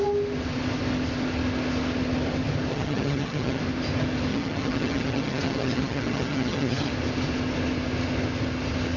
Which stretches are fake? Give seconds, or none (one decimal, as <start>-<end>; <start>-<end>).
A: 2.7-3.6; 4.3-6.9